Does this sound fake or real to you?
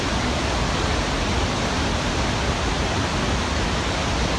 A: real